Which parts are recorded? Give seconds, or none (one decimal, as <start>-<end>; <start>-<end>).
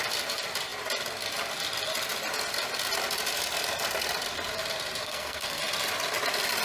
0.0-5.0; 5.6-6.6